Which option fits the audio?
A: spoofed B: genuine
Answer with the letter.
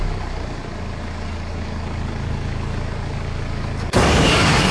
A